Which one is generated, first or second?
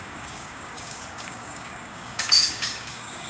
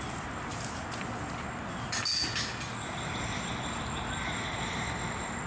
first